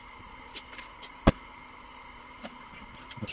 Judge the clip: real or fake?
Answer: real